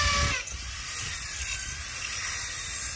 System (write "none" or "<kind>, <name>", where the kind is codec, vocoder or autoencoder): none